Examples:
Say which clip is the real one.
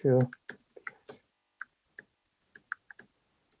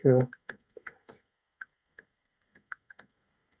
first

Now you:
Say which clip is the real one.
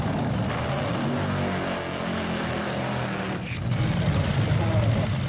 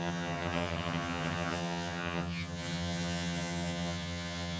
first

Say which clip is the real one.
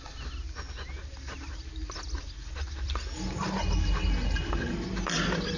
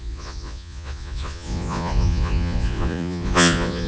first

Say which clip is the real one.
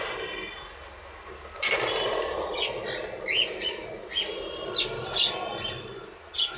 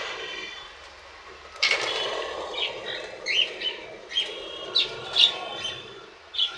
first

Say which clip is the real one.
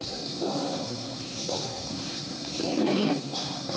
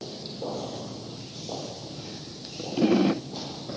second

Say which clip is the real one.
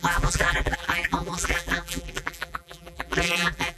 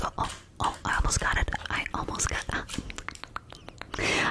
second